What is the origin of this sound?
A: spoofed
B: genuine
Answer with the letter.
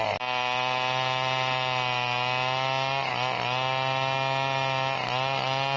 B